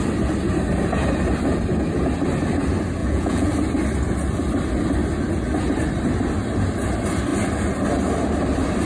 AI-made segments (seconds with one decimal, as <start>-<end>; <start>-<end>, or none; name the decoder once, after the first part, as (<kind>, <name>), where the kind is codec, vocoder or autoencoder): 3.0-3.5 (vocoder, Vocos)